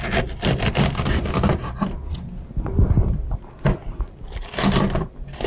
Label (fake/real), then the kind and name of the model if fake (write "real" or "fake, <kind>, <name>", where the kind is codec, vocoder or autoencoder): real